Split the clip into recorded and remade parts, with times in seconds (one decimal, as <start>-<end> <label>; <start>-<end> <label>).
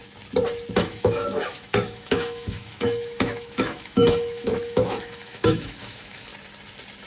0.0-0.8 recorded; 0.8-6.3 remade; 6.3-7.1 recorded